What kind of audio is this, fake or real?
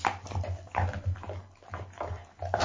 real